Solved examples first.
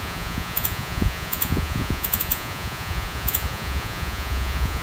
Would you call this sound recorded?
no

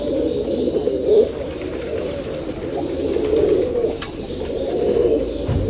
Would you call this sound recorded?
yes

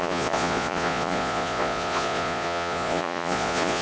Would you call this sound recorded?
no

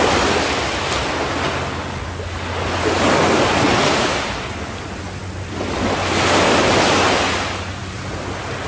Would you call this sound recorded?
yes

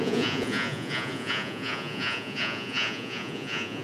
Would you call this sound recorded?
no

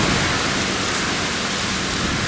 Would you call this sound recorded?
yes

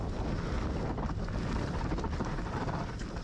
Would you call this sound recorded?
yes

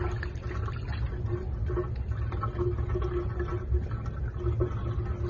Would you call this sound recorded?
yes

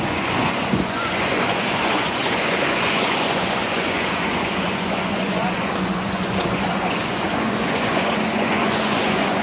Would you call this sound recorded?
no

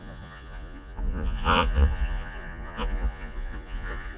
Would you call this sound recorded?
no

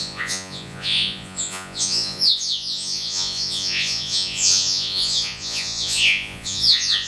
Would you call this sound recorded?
no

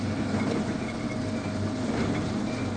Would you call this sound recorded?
yes